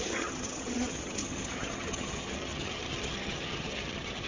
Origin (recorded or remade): remade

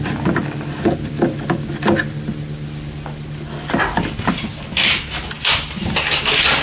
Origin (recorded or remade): recorded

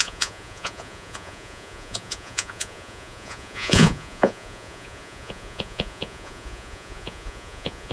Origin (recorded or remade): remade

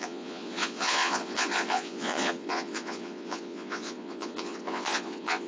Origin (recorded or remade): remade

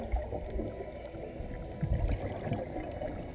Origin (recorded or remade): recorded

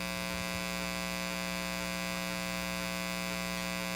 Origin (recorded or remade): recorded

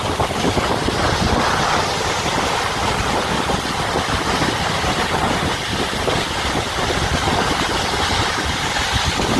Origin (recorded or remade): recorded